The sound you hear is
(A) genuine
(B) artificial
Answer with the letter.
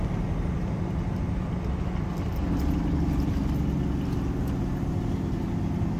A